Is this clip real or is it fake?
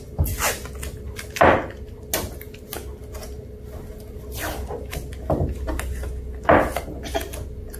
real